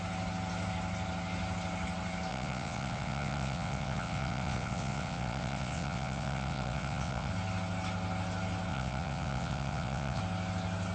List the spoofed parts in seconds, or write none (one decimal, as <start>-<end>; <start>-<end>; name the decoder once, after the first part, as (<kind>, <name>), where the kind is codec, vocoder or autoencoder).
2.3-7.3 (vocoder, WaveNeXt); 8.7-10.2